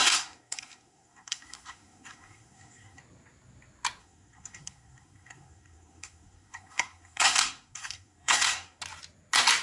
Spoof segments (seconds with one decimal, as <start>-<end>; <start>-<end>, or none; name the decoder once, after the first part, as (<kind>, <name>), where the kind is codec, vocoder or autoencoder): 0.0-3.0 (codec, SNAC); 4.0-8.8